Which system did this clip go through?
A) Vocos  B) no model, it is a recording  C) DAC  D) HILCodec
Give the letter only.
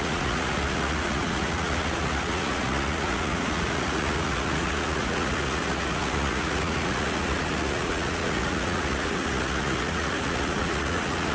A